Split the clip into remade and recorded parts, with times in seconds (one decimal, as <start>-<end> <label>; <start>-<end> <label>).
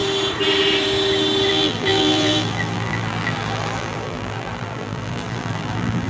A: 0.0-1.5 recorded; 1.5-6.1 remade